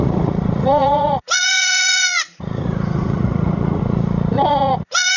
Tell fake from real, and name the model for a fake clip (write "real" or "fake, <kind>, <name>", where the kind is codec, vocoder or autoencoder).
fake, vocoder, Vocos